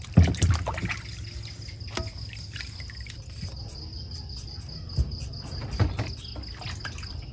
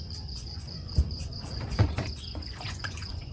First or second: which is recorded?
first